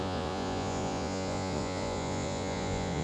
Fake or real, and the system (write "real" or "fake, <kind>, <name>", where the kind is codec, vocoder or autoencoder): fake, vocoder, Vocos